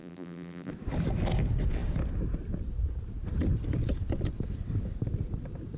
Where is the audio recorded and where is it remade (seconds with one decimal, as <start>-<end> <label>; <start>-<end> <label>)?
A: 0.0-0.7 remade; 0.7-5.8 recorded